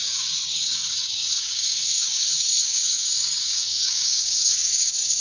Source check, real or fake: fake